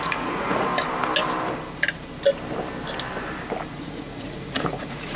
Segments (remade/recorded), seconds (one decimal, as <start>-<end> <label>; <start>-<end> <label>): 0.0-0.7 remade; 0.7-3.7 recorded; 3.7-5.2 remade